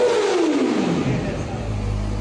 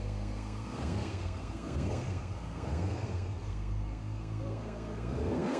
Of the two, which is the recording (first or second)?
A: first